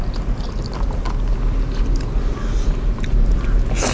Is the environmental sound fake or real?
real